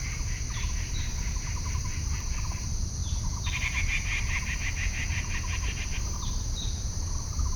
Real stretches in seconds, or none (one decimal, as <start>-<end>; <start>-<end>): none